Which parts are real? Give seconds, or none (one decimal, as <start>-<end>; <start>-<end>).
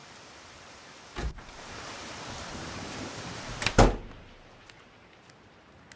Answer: 3.6-6.0